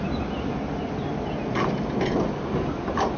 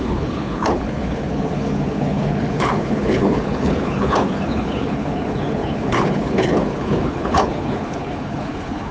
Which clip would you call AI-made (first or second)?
second